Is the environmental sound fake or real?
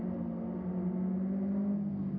real